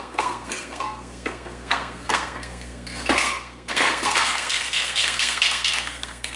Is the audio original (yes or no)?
no